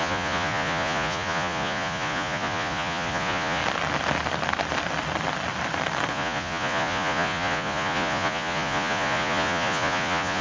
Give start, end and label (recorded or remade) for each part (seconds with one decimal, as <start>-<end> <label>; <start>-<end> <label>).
0.0-3.6 remade; 3.6-6.1 recorded; 6.1-10.4 remade